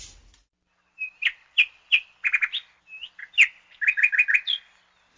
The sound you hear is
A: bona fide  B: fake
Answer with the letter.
A